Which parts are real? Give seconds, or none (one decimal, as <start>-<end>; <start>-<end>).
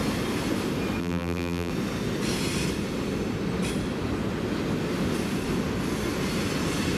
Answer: 0.0-1.0; 1.7-7.0